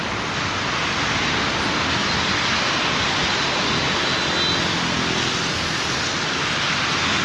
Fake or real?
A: real